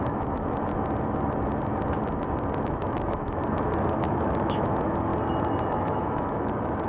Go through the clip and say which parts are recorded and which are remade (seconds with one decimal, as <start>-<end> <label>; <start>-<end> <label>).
0.0-0.7 remade; 0.7-2.6 recorded; 2.6-5.1 remade; 5.1-5.7 recorded; 5.7-6.9 remade